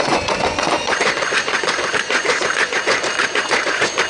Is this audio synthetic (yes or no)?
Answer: yes